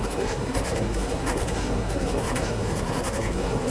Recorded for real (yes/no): no